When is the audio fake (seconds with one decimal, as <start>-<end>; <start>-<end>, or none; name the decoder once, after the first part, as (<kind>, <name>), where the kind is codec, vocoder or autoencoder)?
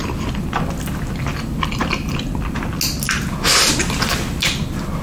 none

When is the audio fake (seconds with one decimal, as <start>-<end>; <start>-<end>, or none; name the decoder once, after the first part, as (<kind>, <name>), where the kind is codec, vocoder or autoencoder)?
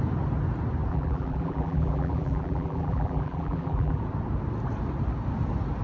0.9-4.0 (vocoder, BigVGAN v2)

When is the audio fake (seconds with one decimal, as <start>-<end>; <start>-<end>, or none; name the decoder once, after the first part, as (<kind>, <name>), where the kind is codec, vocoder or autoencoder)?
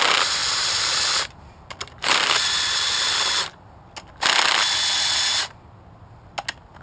0.4-3.4 (vocoder, BigVGAN v2)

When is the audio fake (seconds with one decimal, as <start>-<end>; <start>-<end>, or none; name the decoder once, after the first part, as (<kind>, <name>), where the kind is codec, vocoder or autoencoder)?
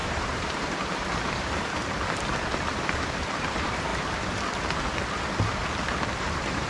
0.0-1.8 (vocoder, BigVGAN v2); 2.7-3.9; 6.2-6.7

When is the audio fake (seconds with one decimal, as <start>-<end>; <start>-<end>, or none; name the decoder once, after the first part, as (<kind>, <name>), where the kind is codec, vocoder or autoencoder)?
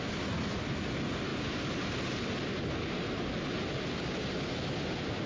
none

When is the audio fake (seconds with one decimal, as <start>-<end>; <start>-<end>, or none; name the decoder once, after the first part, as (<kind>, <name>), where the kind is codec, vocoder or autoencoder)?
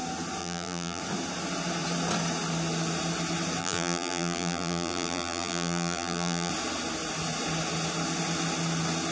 0.4-1.0 (vocoder, BigVGAN v2); 3.6-6.5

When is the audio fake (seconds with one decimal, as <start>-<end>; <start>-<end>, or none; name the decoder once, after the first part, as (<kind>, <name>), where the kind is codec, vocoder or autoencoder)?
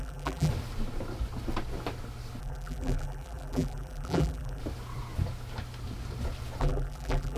0.0-0.5 (vocoder, BigVGAN v2); 2.4-4.6; 6.6-7.4